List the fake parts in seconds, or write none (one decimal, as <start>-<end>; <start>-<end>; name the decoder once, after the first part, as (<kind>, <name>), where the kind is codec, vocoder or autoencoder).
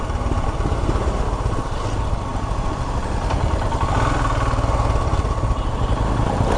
none